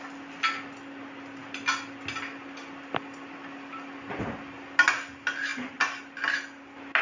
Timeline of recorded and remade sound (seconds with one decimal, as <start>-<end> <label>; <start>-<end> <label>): 0.0-7.0 recorded